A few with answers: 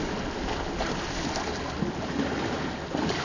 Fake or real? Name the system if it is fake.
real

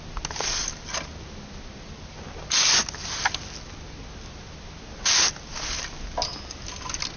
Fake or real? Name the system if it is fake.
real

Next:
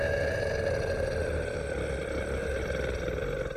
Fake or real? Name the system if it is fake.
real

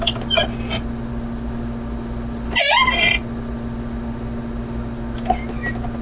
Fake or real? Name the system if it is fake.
real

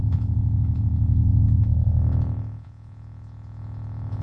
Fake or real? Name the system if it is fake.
fake, vocoder, Vocos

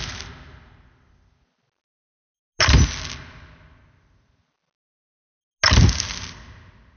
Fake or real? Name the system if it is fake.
real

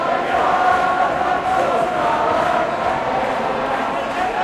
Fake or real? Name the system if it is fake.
real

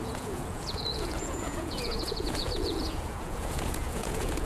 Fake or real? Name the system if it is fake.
fake, vocoder, Vocos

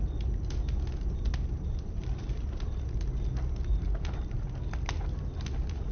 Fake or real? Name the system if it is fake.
real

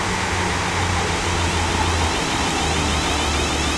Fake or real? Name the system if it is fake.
real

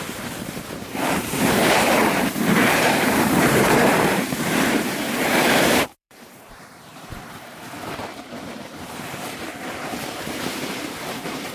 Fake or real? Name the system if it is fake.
fake, vocoder, BigVGAN v2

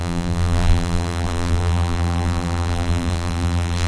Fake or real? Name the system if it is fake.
fake, vocoder, BigVGAN v2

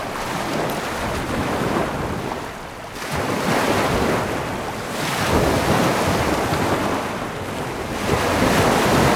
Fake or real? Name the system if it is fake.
real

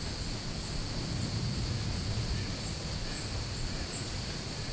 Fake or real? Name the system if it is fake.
fake, vocoder, Vocos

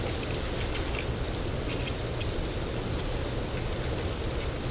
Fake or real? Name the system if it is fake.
real